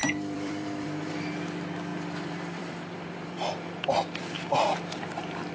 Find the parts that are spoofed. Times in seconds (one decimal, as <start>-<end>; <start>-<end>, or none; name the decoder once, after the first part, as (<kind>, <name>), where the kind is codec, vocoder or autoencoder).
0.0-1.2 (vocoder, BigVGAN v2); 1.9-4.2